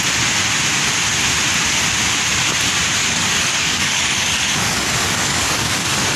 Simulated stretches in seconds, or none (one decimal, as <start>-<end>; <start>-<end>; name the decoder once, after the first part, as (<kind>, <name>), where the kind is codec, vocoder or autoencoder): 3.0-6.2 (codec, DAC)